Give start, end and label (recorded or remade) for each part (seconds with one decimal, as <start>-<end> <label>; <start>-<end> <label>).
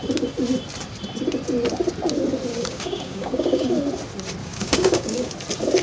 0.0-2.5 recorded; 2.5-3.7 remade; 3.7-4.4 recorded; 4.4-5.3 remade; 5.3-5.8 recorded